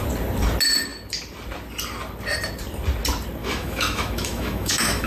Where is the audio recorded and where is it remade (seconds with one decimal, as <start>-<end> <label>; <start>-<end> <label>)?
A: 0.0-3.4 recorded; 3.4-5.1 remade

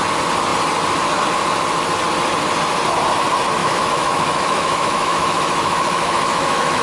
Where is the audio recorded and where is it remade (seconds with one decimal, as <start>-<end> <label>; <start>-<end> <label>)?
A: 0.0-3.6 recorded; 3.6-6.8 remade

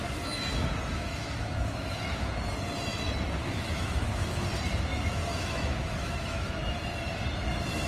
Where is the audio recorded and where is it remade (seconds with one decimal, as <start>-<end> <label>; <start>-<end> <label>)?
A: 0.0-0.9 recorded; 0.9-2.4 remade; 2.4-3.4 recorded; 3.4-4.5 remade; 4.5-4.9 recorded; 4.9-6.8 remade; 6.8-7.9 recorded

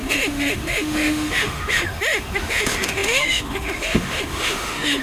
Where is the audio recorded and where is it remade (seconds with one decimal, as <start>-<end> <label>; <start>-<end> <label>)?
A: 0.0-5.0 remade